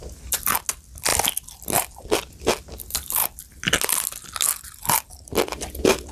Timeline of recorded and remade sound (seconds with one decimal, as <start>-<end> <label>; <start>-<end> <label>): 0.0-6.1 recorded